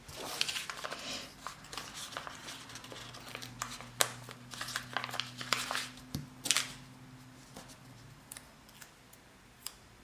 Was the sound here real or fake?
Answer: real